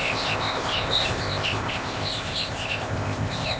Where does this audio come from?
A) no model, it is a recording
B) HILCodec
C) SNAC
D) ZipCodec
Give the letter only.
D